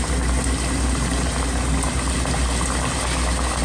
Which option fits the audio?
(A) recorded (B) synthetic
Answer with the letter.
A